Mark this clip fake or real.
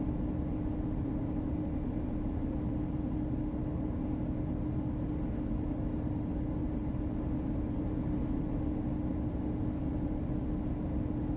real